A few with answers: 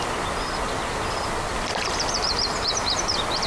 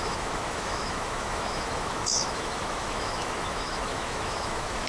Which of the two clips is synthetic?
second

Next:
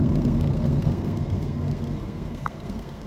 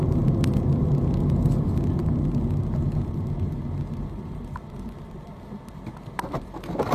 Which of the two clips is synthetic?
first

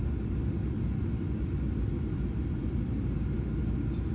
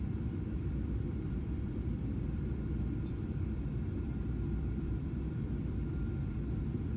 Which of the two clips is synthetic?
second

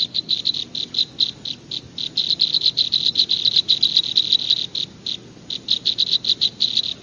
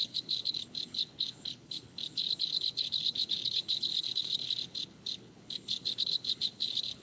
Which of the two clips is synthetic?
second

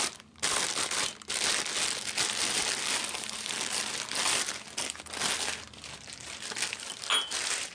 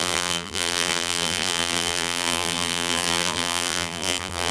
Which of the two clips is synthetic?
second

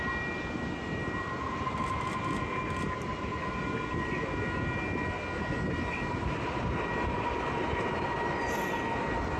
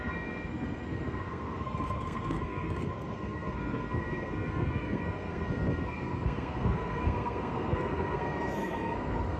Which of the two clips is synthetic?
second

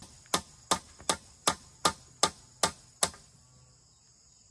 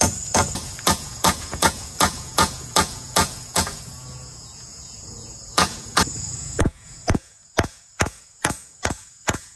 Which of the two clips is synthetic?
second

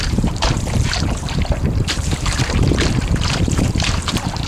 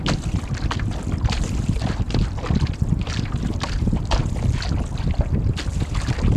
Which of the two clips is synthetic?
first